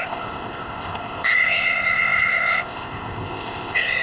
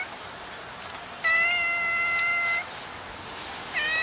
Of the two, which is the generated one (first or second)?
first